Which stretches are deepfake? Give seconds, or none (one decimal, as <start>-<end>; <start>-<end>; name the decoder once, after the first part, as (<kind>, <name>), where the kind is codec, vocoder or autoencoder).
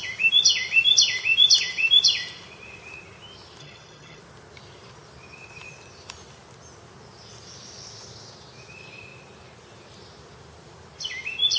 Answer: 3.6-4.2 (vocoder, HiFi-GAN)